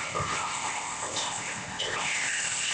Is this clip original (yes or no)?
no